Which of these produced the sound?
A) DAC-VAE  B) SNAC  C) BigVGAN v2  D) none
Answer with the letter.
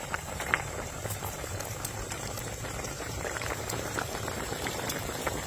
C